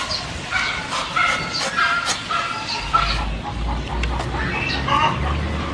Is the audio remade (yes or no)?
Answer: no